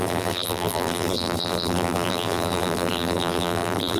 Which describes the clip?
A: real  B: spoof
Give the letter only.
B